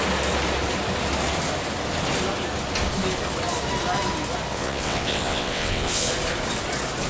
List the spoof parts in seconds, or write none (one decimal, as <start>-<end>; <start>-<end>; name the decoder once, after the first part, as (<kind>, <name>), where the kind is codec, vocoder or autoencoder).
4.5-6.1 (vocoder, WaveNeXt)